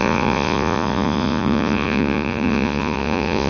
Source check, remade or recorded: remade